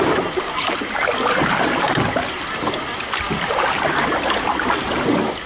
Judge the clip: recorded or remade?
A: recorded